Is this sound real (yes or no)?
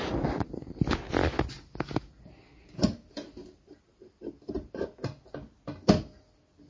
yes